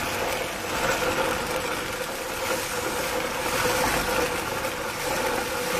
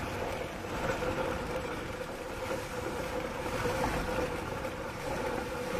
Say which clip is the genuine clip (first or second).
first